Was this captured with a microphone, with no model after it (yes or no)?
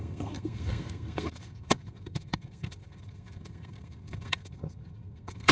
no